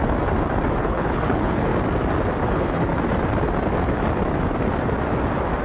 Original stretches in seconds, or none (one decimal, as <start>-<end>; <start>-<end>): 0.0-0.8; 1.7-2.4; 2.9-5.6